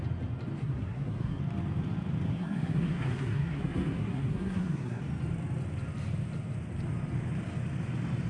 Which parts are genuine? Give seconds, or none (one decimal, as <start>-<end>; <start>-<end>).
0.0-0.6; 1.4-2.3; 5.0-8.3